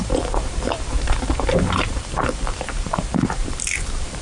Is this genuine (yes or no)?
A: no